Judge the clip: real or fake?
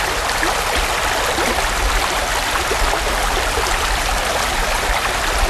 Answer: real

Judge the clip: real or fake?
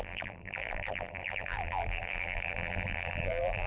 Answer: fake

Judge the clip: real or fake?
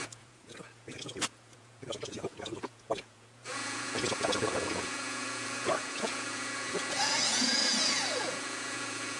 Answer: fake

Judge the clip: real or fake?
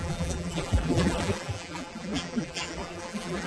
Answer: fake